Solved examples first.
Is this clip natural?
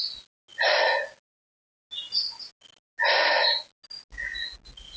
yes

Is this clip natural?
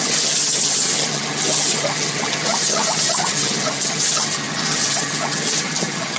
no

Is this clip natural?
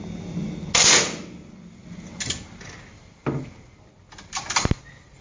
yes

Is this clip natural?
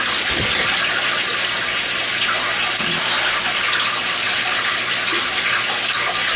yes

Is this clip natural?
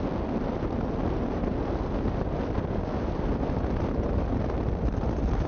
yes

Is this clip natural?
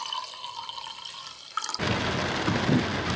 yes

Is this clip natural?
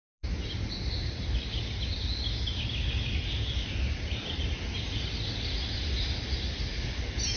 yes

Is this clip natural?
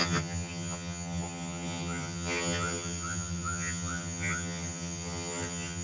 no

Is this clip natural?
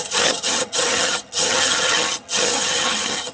no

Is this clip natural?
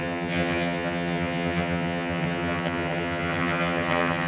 no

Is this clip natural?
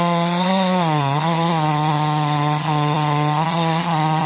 no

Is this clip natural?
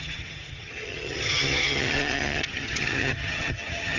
no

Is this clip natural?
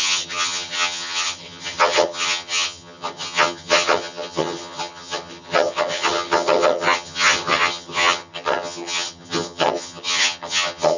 no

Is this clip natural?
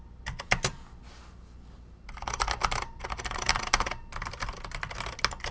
yes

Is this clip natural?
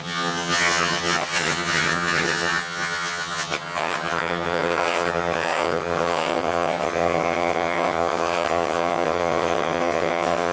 no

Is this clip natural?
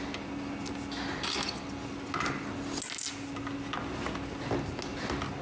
yes